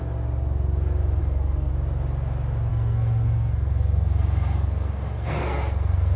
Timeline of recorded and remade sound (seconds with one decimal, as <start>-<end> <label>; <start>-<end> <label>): 0.0-1.2 recorded; 1.2-1.7 remade; 1.7-2.7 recorded; 2.7-6.2 remade